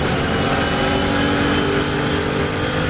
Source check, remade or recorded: recorded